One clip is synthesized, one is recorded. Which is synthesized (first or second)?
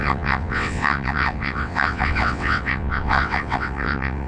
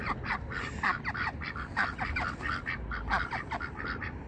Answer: first